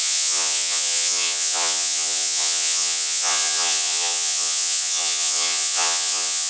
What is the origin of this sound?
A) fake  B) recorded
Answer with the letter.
A